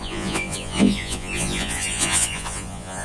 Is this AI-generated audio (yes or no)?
yes